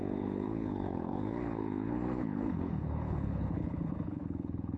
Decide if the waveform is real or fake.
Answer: fake